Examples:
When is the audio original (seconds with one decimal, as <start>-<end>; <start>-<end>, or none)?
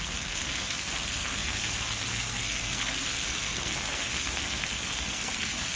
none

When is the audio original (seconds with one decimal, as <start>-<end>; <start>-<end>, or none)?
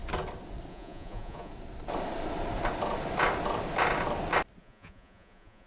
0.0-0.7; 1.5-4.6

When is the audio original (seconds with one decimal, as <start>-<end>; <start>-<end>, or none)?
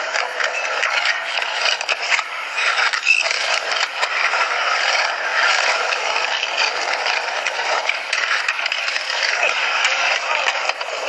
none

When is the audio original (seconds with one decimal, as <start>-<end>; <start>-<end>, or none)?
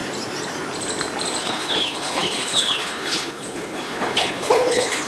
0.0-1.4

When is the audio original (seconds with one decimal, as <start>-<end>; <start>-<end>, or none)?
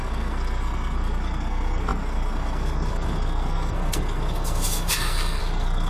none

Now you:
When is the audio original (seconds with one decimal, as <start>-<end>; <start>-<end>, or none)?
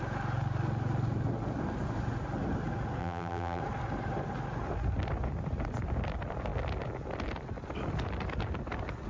0.0-3.0; 3.6-9.1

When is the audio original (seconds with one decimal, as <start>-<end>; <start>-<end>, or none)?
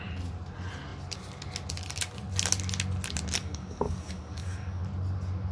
0.0-3.4; 4.8-5.5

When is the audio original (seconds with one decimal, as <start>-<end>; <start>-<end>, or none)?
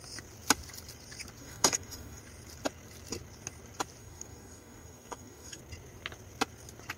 0.0-1.4; 2.2-4.0; 5.6-7.0